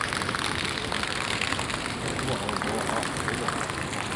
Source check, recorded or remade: recorded